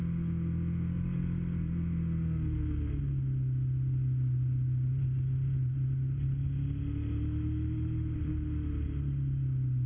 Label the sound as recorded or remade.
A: recorded